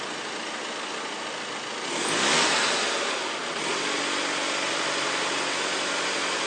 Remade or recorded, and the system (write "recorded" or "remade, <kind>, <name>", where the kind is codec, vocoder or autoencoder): recorded